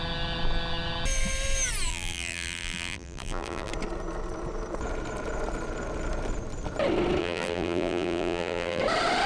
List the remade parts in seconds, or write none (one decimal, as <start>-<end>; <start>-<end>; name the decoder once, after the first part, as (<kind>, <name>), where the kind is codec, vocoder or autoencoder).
1.9-3.7 (vocoder, BigVGAN v2); 7.2-8.8